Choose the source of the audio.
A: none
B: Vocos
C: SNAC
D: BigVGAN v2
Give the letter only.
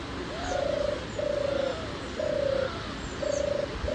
A